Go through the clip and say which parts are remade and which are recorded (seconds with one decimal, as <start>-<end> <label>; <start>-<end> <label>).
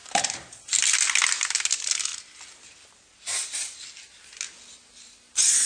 0.0-0.7 remade; 0.7-5.7 recorded